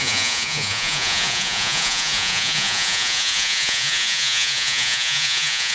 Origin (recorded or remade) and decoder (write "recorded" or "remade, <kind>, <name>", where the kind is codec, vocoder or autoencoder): remade, vocoder, Vocos